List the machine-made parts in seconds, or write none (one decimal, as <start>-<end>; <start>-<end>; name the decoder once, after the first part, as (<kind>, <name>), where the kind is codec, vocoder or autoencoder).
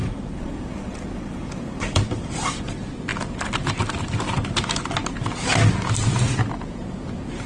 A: 0.0-2.6 (vocoder, BigVGAN v2)